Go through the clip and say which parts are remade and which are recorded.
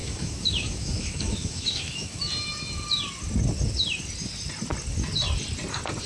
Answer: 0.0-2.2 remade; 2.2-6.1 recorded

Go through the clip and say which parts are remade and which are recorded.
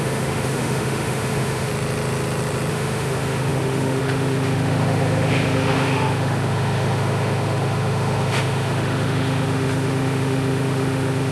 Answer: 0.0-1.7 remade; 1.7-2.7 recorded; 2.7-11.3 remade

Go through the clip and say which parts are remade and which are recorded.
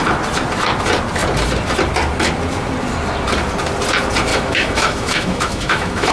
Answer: 0.0-4.3 recorded; 4.3-6.1 remade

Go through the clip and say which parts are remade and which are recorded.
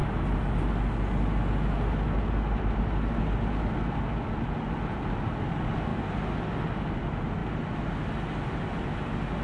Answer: 0.0-9.4 recorded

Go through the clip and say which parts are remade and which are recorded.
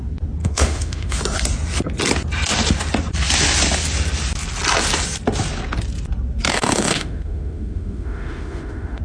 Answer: 0.0-0.4 recorded; 0.4-1.2 remade; 1.2-6.5 recorded; 6.5-9.0 remade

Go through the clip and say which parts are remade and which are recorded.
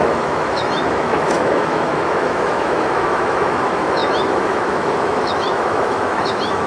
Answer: 0.0-6.7 remade